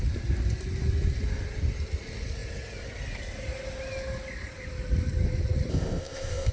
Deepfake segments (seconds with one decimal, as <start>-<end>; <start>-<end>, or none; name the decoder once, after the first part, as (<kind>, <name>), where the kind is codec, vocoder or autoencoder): 5.7-6.5 (codec, ZipCodec)